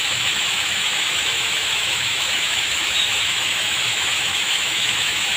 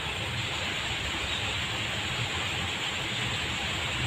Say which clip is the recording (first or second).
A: second